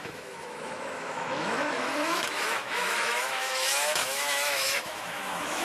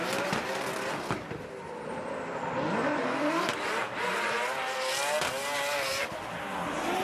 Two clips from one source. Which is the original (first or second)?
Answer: second